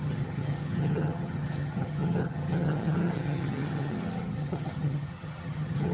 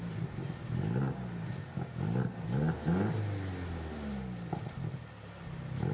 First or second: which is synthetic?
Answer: first